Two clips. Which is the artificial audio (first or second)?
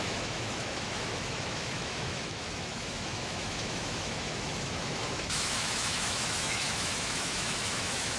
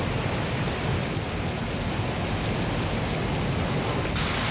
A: first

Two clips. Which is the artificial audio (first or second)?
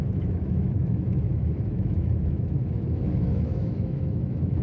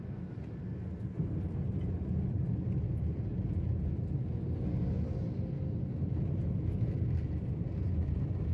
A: first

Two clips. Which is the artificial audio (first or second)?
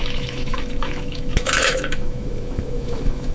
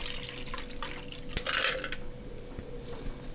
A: first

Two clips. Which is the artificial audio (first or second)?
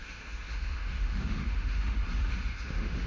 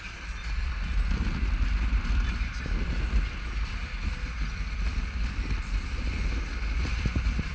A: first